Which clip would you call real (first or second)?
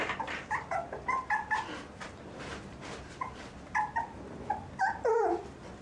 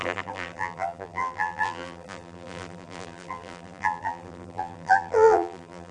first